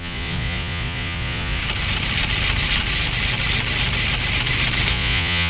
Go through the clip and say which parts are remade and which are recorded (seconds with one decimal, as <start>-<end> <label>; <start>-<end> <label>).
0.0-1.6 remade; 1.6-4.9 recorded; 4.9-5.5 remade